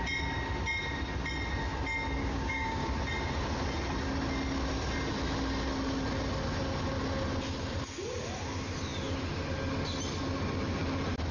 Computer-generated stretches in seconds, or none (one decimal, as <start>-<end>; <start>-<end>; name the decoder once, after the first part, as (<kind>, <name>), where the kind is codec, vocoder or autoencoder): 2.2-2.9 (codec, DAC)